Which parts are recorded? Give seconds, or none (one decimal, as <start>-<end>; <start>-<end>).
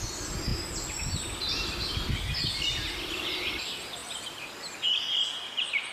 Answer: 0.0-4.0; 4.5-5.9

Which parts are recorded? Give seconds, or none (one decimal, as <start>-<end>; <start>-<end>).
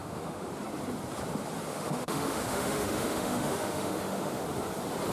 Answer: 0.5-1.7; 4.4-5.1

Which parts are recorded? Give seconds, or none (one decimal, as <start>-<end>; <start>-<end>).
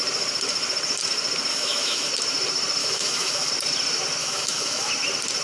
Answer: 0.0-1.5; 2.1-2.8; 3.5-4.2; 4.9-5.4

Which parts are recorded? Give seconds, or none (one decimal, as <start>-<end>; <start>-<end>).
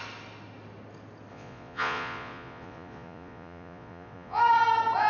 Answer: 0.0-1.3; 4.4-5.1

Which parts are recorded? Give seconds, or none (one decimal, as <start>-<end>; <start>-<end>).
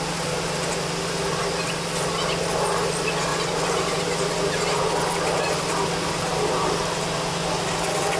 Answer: 0.0-3.3; 4.0-8.2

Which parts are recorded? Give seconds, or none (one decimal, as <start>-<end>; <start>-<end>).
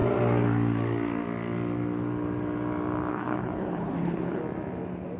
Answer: 0.0-3.1; 4.4-5.2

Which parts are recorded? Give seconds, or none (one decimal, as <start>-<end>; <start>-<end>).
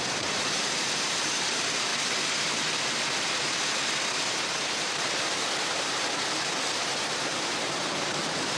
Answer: 1.9-4.3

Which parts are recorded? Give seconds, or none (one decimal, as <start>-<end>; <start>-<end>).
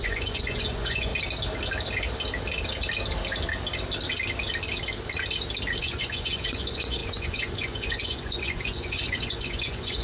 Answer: 1.1-5.8